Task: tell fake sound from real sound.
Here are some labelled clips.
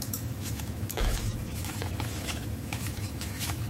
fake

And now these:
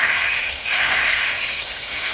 fake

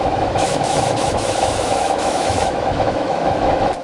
fake